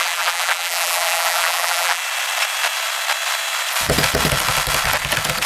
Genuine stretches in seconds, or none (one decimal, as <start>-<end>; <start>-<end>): 2.0-5.5